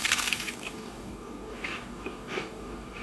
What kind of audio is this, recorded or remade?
remade